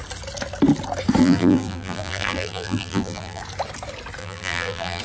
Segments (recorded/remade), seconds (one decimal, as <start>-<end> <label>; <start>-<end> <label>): 0.0-1.2 recorded; 1.2-3.4 remade; 3.4-4.2 recorded; 4.2-5.0 remade